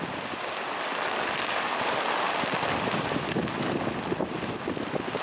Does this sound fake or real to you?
real